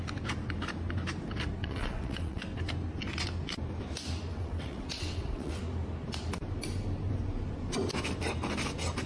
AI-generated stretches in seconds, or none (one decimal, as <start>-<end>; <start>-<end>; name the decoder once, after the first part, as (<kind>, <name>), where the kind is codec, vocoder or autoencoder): 1.6-2.4 (vocoder, WaveNeXt); 4.3-5.6